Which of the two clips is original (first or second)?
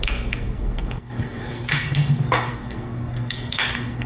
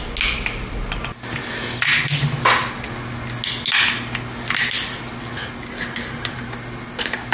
second